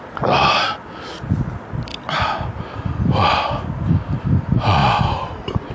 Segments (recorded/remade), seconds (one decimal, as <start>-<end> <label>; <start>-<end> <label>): 0.0-4.8 recorded; 4.8-5.7 remade